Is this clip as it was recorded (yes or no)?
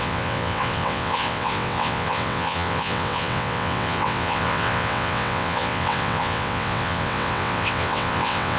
no